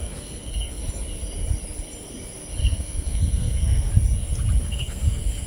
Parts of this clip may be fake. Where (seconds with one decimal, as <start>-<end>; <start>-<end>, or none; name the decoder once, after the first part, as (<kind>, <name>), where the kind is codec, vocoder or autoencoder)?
0.0-0.8 (codec, SNAC); 2.6-3.9; 4.6-5.5